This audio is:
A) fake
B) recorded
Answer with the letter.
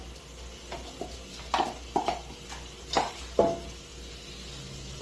B